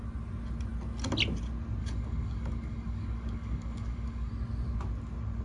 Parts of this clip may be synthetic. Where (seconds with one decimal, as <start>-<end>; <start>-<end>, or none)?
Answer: 1.8-4.3